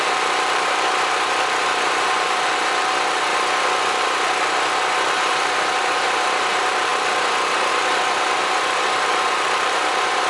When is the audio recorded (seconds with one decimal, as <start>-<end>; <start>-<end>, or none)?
3.3-5.1; 6.9-7.7